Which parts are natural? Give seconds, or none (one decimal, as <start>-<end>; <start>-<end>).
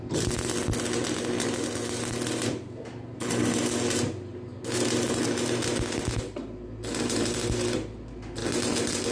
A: 0.0-9.1